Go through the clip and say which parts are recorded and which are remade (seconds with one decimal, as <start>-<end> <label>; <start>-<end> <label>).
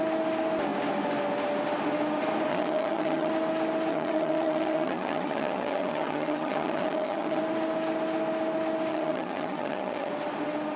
0.0-2.5 recorded; 2.5-3.3 remade; 3.3-3.9 recorded; 3.9-7.4 remade; 7.4-8.9 recorded; 8.9-10.1 remade; 10.1-10.8 recorded